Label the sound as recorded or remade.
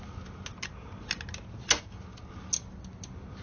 recorded